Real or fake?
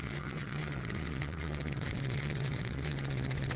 fake